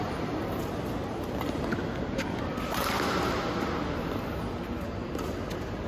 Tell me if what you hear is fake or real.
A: real